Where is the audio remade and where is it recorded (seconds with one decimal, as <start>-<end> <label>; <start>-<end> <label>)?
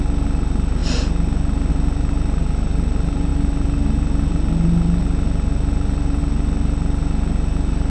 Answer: 0.0-7.9 recorded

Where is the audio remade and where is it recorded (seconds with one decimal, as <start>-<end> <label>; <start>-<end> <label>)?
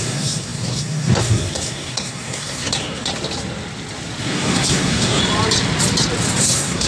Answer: 0.0-3.1 remade; 3.1-4.2 recorded; 4.2-5.2 remade; 5.2-6.4 recorded; 6.4-6.9 remade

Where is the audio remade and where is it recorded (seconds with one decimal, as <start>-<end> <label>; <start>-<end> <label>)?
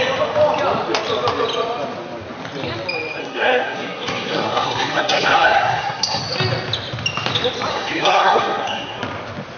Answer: 0.0-3.2 recorded; 3.2-6.2 remade; 6.2-7.7 recorded; 7.7-9.0 remade; 9.0-9.6 recorded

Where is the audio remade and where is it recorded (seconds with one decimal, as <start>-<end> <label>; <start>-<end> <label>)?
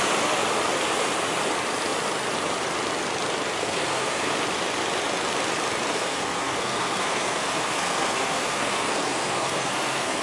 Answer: 0.0-3.6 recorded; 3.6-4.3 remade; 4.3-5.9 recorded; 5.9-10.2 remade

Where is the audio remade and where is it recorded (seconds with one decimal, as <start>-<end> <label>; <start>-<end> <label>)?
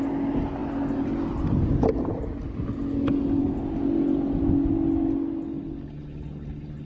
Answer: 0.0-6.9 recorded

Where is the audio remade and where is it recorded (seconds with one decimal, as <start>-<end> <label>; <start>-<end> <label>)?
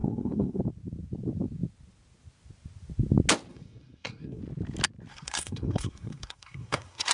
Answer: 0.0-0.6 remade; 0.6-3.5 recorded; 3.5-4.4 remade; 4.4-5.1 recorded; 5.1-7.1 remade